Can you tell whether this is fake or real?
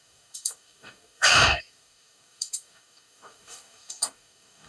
fake